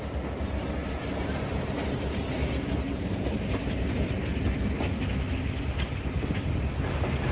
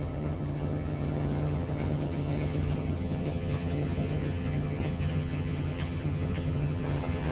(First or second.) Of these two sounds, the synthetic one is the second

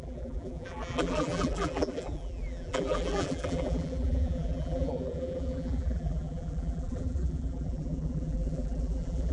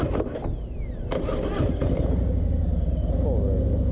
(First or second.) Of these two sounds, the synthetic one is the first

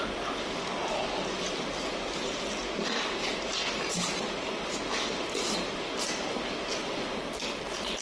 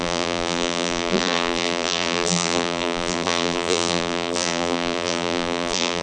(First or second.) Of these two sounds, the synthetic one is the second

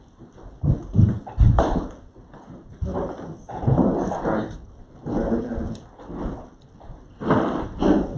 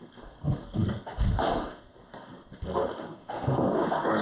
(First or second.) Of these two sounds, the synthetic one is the second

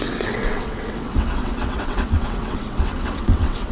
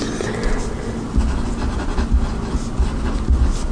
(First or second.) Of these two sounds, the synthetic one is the first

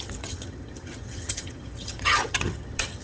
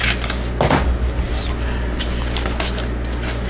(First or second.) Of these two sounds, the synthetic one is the first